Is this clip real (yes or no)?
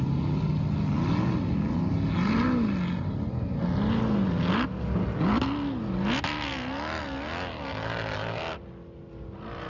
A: yes